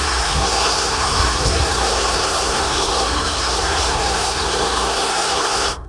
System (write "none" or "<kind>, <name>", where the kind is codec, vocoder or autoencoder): codec, SNAC